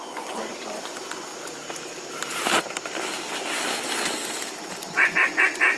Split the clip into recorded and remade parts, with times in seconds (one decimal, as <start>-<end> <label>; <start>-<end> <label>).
0.0-1.3 remade; 1.3-4.8 recorded; 4.8-5.8 remade

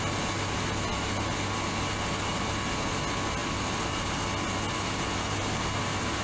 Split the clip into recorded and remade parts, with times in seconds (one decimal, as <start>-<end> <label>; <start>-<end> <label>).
0.0-6.2 recorded

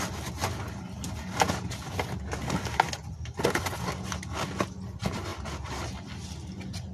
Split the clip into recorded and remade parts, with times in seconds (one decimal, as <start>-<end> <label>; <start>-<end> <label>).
0.0-6.9 recorded

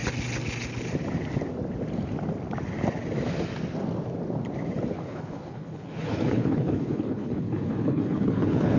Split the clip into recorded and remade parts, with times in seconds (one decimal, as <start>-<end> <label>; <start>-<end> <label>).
0.0-4.9 recorded; 4.9-8.8 remade

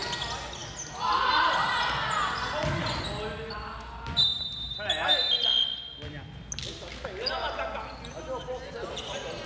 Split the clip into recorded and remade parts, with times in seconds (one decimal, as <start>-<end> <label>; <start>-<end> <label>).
0.0-9.5 recorded